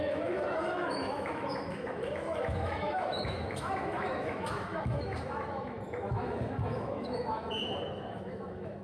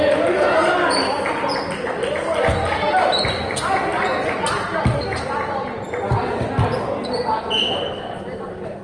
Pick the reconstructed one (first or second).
first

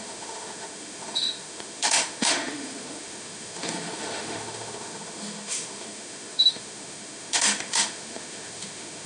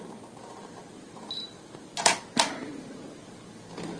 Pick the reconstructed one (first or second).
first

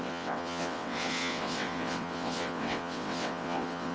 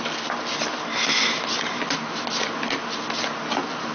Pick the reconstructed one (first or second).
first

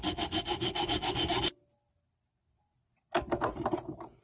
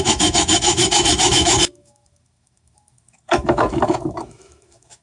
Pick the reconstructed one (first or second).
second